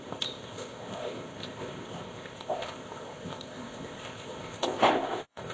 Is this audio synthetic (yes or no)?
yes